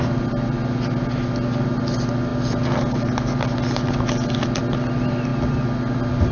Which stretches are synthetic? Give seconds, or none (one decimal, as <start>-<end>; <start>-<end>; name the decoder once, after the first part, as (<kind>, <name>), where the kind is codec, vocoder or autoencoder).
none